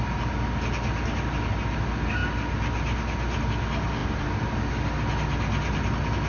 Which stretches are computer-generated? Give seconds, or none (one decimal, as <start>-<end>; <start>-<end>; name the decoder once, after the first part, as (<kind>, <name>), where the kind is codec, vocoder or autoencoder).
none